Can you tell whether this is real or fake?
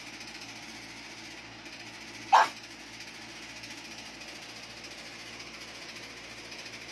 real